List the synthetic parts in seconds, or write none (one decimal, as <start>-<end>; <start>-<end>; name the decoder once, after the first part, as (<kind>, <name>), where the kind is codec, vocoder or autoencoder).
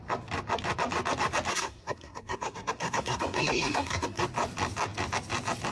1.5-4.2 (codec, SNAC)